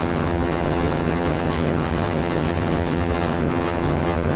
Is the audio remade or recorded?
remade